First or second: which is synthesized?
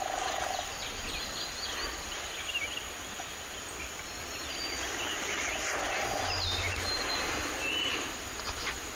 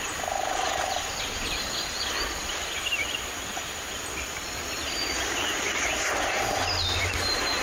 second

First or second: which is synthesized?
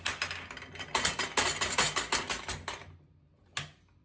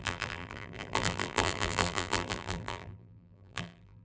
second